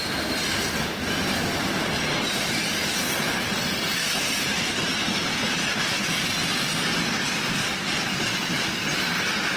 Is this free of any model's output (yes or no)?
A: yes